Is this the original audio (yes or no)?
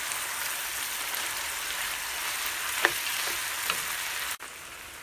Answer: yes